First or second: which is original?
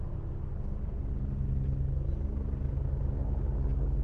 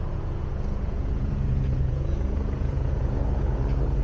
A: first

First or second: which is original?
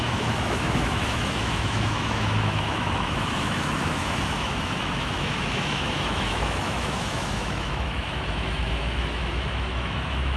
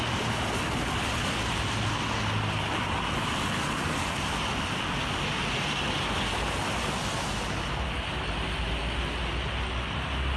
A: second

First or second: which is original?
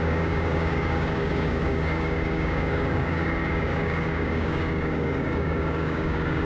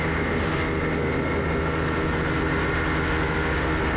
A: second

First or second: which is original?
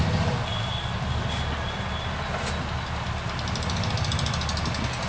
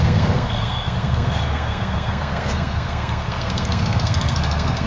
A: first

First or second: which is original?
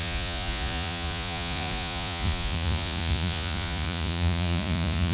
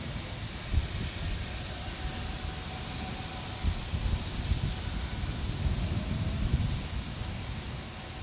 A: second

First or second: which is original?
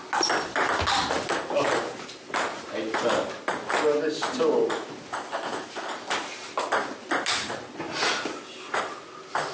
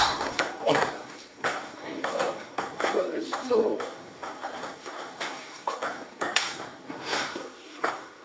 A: first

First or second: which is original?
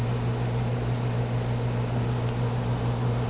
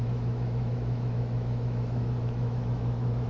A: first